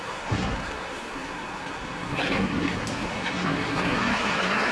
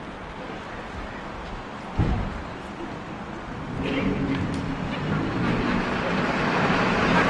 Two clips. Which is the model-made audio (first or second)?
first